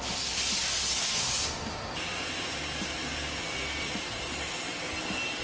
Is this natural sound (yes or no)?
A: no